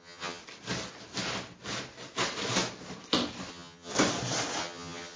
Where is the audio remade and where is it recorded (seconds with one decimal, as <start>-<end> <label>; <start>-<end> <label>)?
0.0-0.4 remade; 0.4-3.5 recorded; 3.5-3.9 remade; 3.9-4.6 recorded; 4.6-5.2 remade